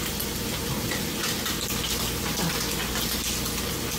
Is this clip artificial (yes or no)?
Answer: no